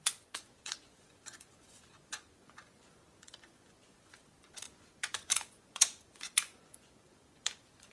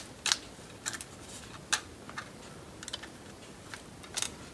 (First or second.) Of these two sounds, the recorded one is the second